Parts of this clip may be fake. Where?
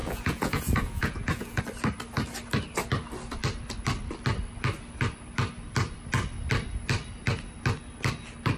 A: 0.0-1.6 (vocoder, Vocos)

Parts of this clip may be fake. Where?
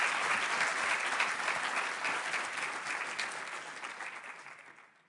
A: none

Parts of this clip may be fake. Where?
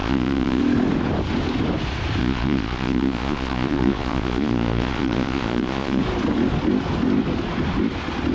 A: 0.0-0.6 (vocoder, Vocos); 2.2-6.0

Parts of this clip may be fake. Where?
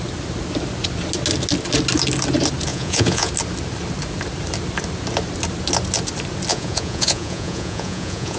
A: 2.7-3.3 (vocoder, Vocos); 6.5-8.4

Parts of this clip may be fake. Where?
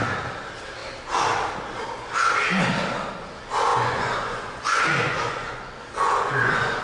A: 3.7-6.8 (vocoder, Vocos)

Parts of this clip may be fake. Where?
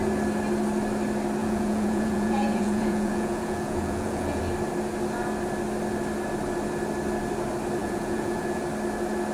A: 1.4-4.4 (vocoder, Vocos); 7.8-8.6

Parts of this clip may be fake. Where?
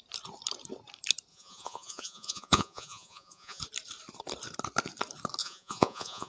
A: 1.3-3.6 (vocoder, Vocos); 5.4-6.3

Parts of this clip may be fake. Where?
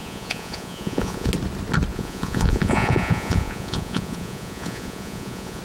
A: 0.0-1.3 (vocoder, Vocos); 1.9-5.6